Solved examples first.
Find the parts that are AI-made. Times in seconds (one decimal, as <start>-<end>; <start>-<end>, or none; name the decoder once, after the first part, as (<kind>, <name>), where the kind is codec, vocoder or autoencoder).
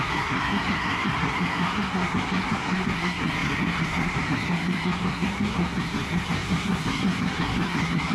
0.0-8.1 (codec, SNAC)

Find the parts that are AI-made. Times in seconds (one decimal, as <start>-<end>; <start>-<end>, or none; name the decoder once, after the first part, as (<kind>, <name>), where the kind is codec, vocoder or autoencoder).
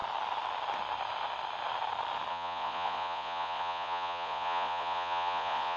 2.3-5.8 (vocoder, Vocos)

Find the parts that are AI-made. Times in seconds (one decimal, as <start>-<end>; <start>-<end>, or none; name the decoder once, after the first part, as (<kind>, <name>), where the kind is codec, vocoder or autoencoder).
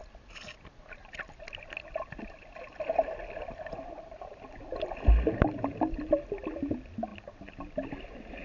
none